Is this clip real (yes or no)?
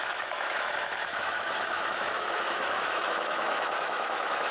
no